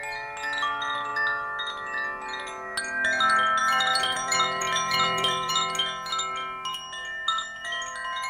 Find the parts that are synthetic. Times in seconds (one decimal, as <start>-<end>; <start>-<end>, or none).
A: 3.6-5.5